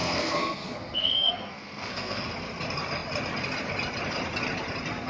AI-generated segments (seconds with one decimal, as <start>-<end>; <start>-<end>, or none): 0.0-2.2